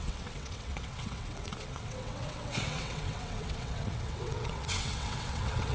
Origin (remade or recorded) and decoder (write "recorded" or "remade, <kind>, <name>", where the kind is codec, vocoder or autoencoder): remade, vocoder, WaveNeXt